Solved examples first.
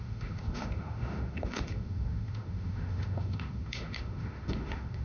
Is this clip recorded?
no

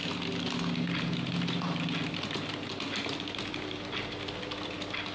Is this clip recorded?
yes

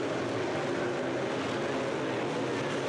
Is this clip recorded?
yes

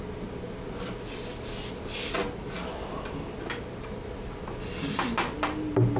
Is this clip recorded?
yes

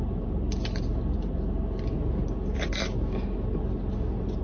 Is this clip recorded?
yes